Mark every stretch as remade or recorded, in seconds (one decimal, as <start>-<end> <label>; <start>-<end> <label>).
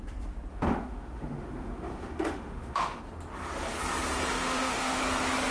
0.0-0.5 recorded; 0.5-3.0 remade; 3.0-4.3 recorded; 4.3-5.0 remade; 5.0-5.5 recorded